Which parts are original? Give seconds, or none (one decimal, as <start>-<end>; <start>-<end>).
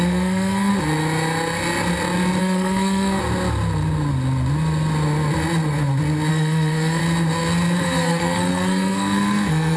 0.7-2.4; 3.2-6.3; 7.0-7.8